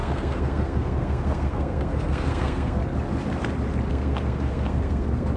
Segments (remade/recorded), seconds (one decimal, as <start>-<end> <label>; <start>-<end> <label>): 0.0-2.8 remade; 2.8-3.9 recorded; 3.9-5.4 remade